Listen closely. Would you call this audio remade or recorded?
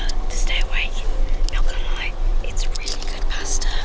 recorded